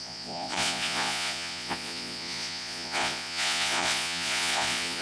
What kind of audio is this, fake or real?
fake